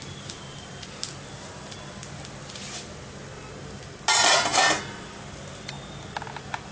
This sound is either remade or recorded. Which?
recorded